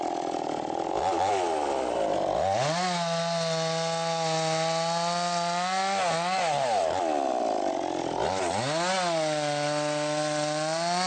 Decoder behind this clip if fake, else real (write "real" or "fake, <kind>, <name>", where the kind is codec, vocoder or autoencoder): real